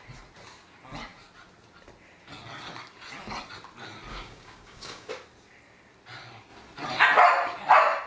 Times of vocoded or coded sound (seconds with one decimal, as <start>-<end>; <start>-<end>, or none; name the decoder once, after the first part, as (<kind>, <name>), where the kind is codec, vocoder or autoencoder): 4.1-5.1 (codec, DAC)